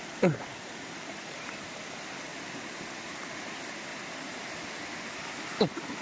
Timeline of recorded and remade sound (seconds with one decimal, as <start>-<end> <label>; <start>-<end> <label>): 0.0-0.5 recorded; 0.5-1.8 remade; 1.8-2.3 recorded; 2.3-2.9 remade; 2.9-3.9 recorded; 3.9-4.5 remade; 4.5-6.0 recorded